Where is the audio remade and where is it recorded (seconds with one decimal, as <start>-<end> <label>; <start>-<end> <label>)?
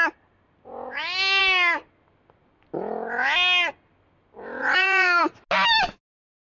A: 0.0-4.6 recorded; 4.6-5.2 remade; 5.2-6.5 recorded